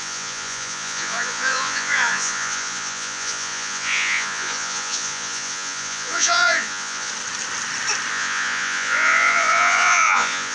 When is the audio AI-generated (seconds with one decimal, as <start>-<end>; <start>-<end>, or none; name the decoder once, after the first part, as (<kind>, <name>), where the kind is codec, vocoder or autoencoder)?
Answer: 0.0-7.1 (vocoder, Vocos); 8.1-10.5